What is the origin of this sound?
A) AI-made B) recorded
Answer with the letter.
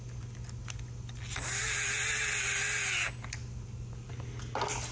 B